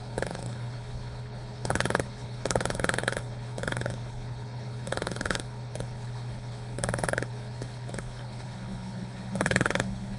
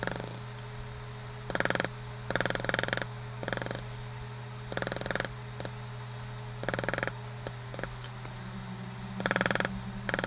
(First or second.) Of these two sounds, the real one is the second